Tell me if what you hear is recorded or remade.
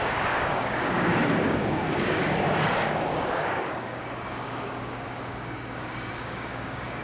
remade